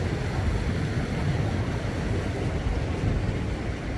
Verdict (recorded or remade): recorded